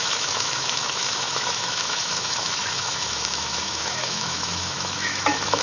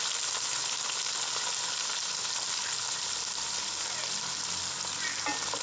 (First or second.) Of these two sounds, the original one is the second